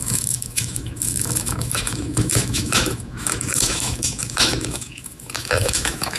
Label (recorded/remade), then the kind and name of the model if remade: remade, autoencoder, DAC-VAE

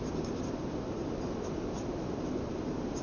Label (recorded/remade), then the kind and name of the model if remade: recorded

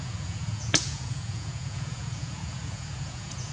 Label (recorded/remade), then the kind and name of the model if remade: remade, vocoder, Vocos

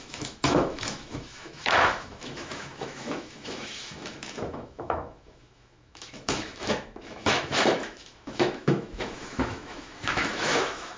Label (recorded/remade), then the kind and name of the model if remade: remade, autoencoder, DAC-VAE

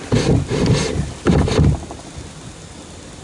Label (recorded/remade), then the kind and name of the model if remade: remade, vocoder, BigVGAN v2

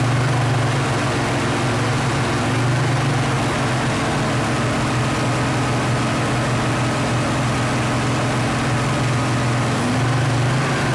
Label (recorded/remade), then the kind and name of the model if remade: recorded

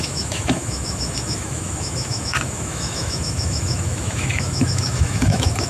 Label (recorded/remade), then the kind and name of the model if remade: remade, autoencoder, DAC-VAE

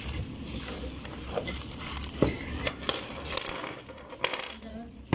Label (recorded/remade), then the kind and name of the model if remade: recorded